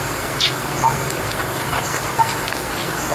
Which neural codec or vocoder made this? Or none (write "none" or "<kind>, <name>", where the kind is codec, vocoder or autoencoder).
codec, SNAC